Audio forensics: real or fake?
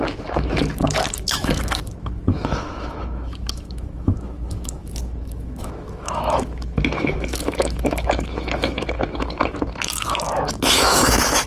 fake